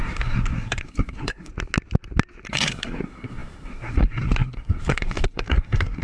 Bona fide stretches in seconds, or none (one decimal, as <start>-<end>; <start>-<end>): 1.5-2.5